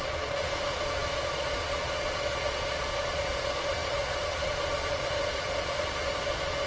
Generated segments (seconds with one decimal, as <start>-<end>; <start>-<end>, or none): 0.0-6.7